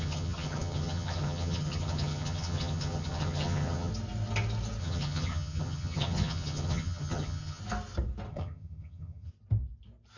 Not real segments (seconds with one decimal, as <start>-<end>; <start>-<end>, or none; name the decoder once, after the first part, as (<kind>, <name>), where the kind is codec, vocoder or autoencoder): 0.0-3.9 (vocoder, HiFi-GAN); 4.8-7.6; 8.3-9.3